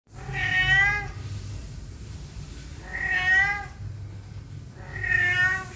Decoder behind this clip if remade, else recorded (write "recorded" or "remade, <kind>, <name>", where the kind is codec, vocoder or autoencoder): recorded